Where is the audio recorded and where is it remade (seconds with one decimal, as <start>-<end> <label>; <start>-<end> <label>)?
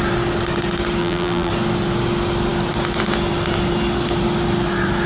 0.0-1.0 recorded; 1.0-1.5 remade; 1.5-5.1 recorded